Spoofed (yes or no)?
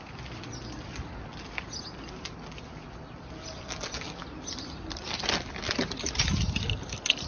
no